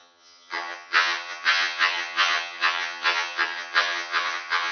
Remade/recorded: remade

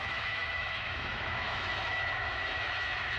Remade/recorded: remade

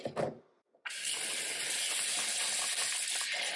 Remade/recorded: recorded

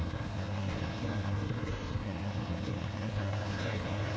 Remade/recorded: remade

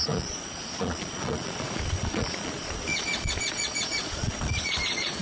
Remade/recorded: remade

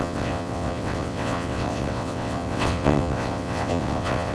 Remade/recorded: remade